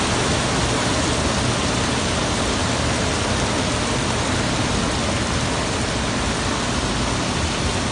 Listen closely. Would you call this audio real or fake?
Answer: real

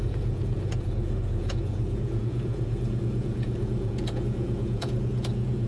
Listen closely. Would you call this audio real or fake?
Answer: fake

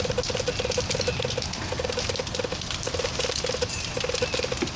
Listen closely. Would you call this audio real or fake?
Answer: real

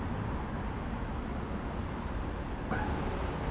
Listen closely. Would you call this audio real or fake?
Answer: real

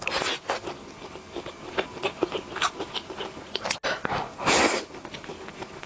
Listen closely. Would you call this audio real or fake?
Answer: real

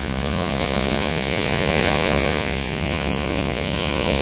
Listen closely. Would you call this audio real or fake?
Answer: fake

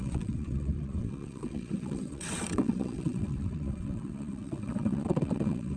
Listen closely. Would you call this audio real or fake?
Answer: fake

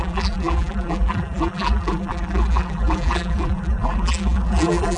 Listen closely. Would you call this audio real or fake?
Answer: fake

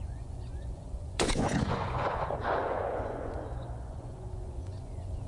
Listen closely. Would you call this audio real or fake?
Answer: fake